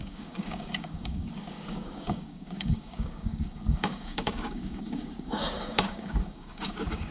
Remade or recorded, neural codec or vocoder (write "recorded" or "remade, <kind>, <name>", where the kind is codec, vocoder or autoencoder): remade, codec, DAC